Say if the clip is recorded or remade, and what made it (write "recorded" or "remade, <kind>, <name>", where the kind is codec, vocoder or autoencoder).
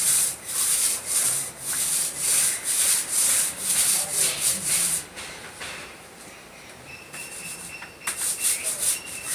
remade, vocoder, BigVGAN v2